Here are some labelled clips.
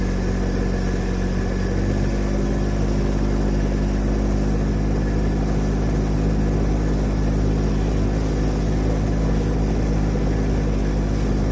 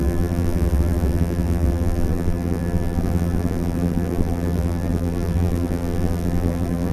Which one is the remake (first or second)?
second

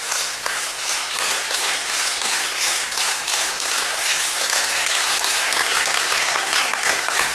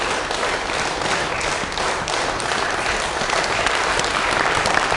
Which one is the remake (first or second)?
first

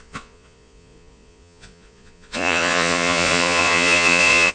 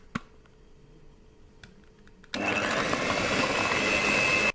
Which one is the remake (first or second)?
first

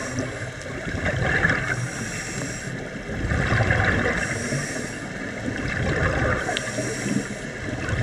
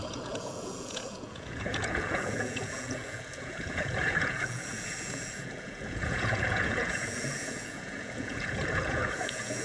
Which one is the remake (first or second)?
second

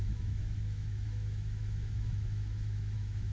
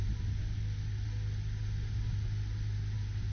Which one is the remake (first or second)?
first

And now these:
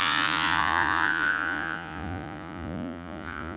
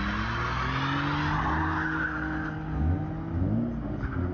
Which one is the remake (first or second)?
first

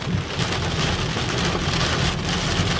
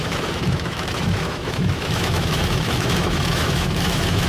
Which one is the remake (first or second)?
second